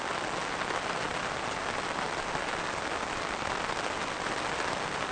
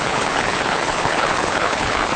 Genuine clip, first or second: first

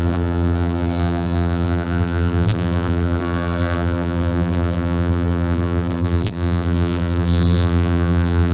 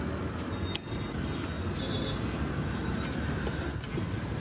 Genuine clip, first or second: second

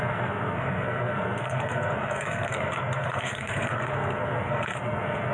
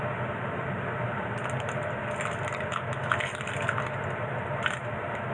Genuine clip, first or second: second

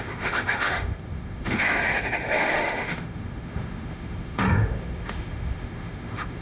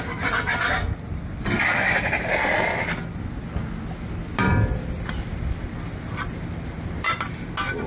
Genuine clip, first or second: second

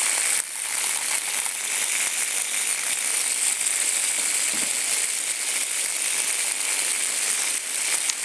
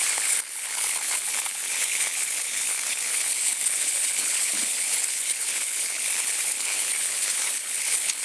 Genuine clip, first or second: first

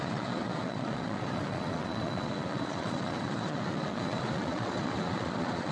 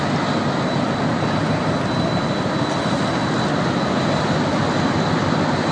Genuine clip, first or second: second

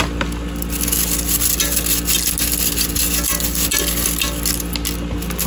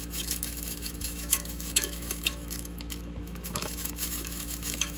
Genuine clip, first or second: first